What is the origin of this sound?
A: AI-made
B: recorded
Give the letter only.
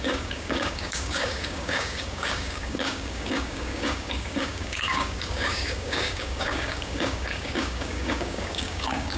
A